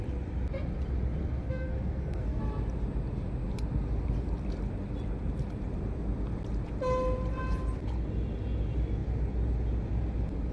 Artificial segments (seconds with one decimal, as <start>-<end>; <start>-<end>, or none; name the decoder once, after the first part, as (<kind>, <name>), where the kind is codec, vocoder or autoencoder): 1.2-2.4 (codec, SNAC)